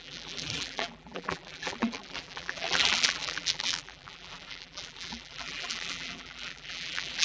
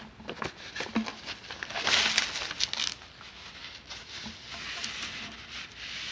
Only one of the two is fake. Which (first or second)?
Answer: first